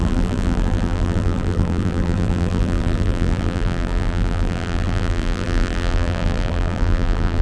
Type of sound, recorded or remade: remade